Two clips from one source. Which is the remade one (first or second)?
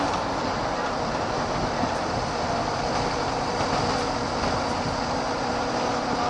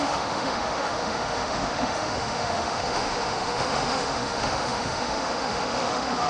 second